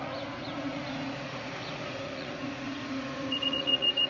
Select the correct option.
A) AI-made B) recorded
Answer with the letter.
A